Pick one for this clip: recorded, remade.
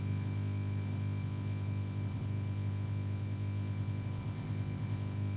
remade